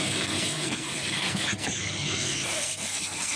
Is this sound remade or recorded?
remade